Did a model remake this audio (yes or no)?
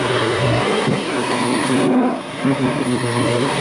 yes